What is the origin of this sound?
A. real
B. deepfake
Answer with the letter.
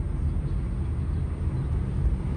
A